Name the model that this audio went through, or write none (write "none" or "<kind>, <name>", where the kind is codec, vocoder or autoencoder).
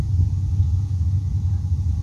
vocoder, Vocos